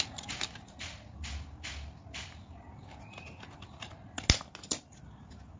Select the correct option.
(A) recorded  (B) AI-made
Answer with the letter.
A